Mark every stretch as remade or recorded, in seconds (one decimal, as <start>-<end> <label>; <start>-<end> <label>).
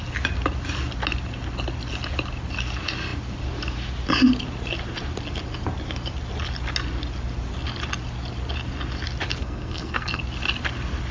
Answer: 0.0-9.4 recorded; 9.4-10.2 remade; 10.2-11.1 recorded